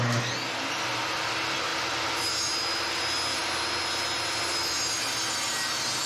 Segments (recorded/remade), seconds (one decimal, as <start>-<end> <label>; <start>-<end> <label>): 0.0-6.1 recorded